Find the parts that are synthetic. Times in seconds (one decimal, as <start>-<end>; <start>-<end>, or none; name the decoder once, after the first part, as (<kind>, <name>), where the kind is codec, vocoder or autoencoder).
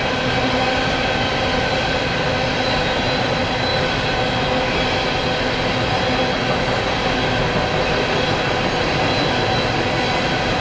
none